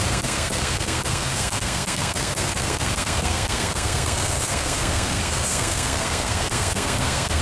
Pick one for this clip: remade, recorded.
remade